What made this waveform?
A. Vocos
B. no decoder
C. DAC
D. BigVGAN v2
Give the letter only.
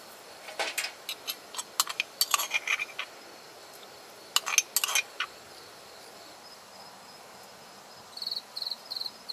B